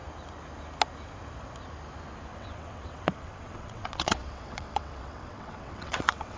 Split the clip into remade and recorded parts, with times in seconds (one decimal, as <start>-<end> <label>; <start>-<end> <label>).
0.0-2.3 recorded; 2.3-6.4 remade